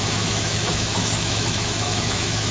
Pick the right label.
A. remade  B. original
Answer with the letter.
A